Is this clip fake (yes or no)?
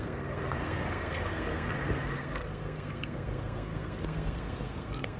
yes